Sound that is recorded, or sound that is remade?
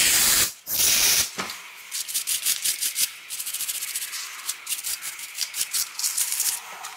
remade